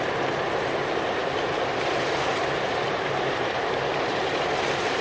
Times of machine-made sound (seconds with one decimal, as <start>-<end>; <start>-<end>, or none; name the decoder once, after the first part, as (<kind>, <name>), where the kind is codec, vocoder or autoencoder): 1.2-4.2 (vocoder, BigVGAN v2)